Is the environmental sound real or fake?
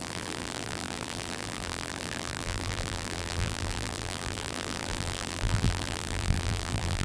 fake